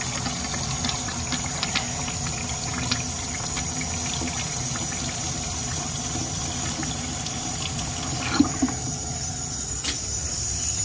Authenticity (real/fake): real